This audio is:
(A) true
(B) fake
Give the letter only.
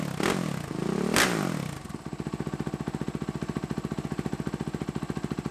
A